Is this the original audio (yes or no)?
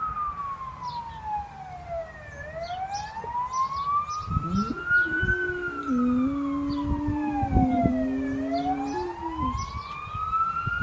yes